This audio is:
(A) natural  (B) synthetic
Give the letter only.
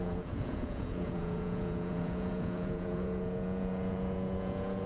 B